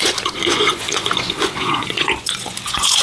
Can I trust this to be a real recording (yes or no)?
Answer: no